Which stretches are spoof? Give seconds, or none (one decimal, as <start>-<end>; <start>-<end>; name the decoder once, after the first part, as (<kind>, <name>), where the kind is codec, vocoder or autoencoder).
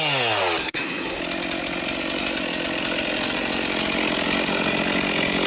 0.6-1.2 (codec, SNAC)